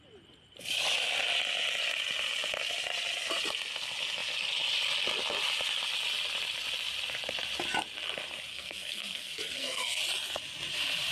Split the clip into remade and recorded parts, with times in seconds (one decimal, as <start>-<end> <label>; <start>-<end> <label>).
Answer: 0.0-8.5 recorded; 8.5-10.0 remade; 10.0-11.1 recorded